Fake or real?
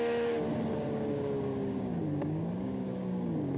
fake